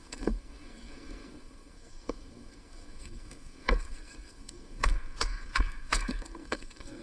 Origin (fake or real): fake